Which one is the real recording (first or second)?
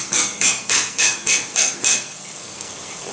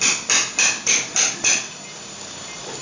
second